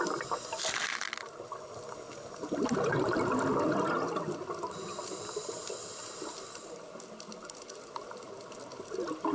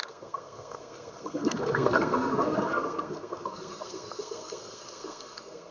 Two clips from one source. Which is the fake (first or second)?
second